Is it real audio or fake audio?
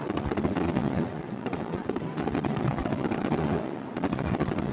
fake